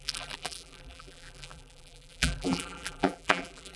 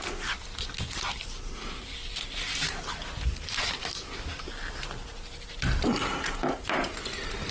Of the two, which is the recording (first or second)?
second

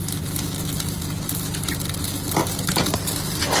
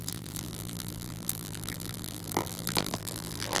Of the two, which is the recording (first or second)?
first